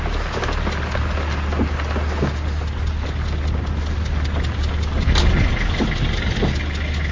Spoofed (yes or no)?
no